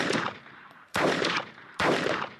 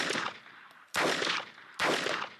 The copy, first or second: first